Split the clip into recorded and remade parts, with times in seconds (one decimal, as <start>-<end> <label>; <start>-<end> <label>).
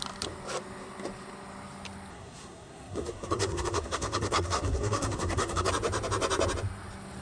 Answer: 0.0-2.1 recorded; 2.1-5.7 remade; 5.7-7.2 recorded